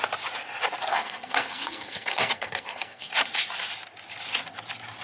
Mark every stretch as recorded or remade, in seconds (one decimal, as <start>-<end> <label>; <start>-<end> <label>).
0.0-0.9 recorded; 0.9-3.1 remade; 3.1-5.0 recorded